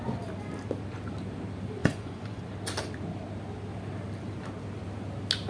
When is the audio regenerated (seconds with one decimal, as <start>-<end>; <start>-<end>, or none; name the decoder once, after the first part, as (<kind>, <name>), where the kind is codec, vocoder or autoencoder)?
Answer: 1.8-2.4 (vocoder, Vocos)